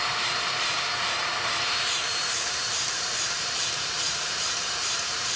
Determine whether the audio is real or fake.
fake